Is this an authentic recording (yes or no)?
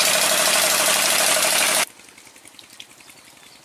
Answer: yes